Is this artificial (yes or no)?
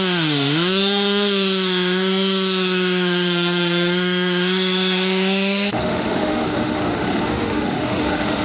yes